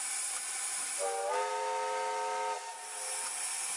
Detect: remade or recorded recorded